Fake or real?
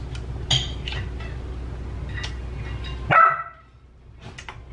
real